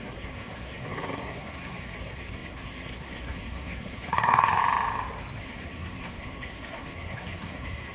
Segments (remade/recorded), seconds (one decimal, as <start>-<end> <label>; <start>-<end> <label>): 0.0-4.6 remade; 4.6-5.4 recorded; 5.4-7.9 remade